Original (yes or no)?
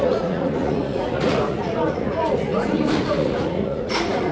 no